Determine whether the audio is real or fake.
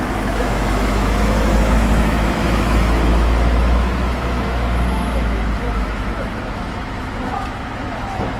fake